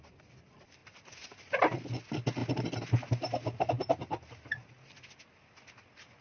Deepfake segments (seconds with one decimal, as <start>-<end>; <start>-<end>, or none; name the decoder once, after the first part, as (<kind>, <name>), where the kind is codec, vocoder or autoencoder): none